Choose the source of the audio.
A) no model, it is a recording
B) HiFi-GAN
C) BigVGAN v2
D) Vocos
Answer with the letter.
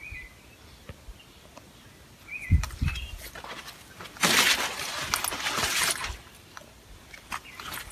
A